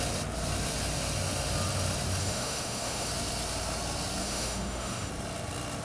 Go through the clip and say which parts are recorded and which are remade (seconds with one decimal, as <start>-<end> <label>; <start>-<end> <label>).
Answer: 0.0-2.2 recorded; 2.2-3.1 remade; 3.1-4.2 recorded; 4.2-5.1 remade; 5.1-5.8 recorded